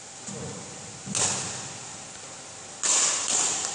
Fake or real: real